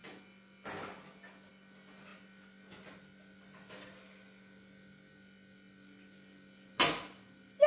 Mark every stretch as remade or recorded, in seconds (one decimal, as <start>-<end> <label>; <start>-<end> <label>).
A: 0.0-7.7 recorded